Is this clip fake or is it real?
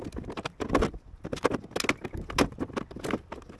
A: real